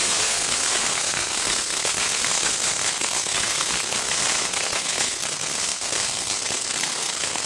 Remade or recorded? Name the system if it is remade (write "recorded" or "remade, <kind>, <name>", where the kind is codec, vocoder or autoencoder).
remade, codec, SNAC